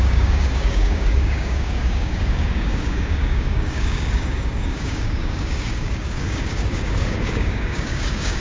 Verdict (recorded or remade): remade